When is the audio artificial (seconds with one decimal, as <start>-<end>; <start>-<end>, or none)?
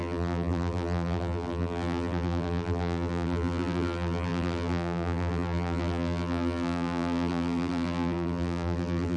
0.0-9.2